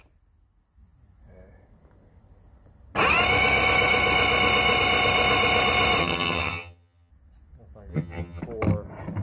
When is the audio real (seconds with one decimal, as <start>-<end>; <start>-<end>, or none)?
0.0-6.0; 7.1-7.9; 8.4-9.2